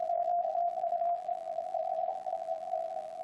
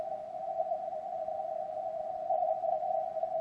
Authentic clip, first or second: second